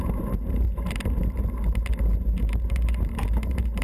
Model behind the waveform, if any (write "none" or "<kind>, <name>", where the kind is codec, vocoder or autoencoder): vocoder, BigVGAN v2